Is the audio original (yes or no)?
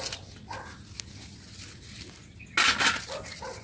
yes